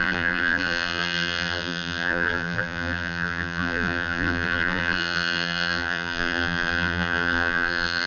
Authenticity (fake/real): fake